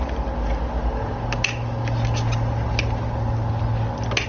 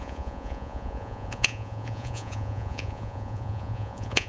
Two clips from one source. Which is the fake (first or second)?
second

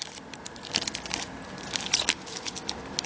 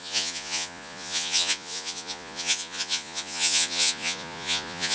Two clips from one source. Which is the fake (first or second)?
second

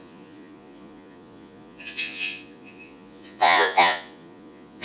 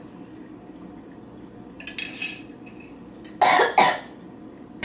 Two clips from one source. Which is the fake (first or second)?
first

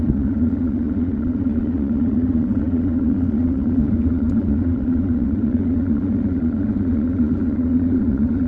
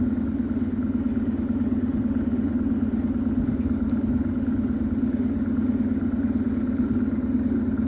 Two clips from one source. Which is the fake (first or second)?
first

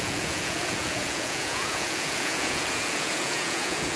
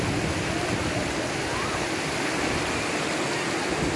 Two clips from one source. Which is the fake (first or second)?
first